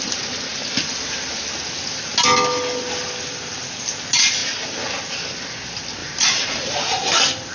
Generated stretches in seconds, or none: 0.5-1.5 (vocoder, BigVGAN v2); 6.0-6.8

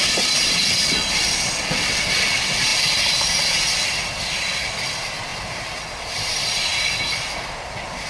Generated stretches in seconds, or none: none

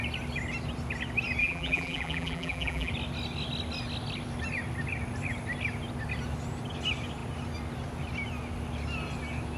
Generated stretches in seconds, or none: 1.4-2.9 (vocoder, BigVGAN v2)